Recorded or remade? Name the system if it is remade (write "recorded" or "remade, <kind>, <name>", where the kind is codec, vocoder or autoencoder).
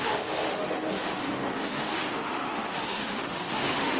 remade, autoencoder, DAC-VAE